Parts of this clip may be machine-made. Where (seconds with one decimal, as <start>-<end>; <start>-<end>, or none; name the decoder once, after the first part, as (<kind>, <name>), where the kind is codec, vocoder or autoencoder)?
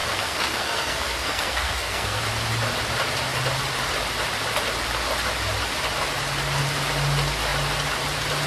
0.0-2.2 (codec, SNAC)